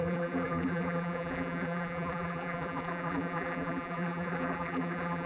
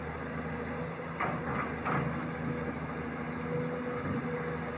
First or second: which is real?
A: second